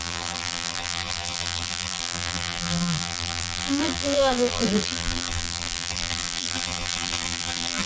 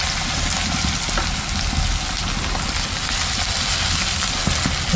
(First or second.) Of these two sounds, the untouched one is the second